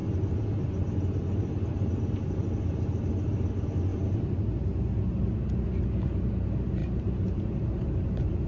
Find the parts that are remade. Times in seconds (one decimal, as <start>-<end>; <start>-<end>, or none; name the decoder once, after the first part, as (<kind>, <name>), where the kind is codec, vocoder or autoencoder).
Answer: 1.7-3.0 (vocoder, BigVGAN v2); 3.9-4.4; 6.8-7.8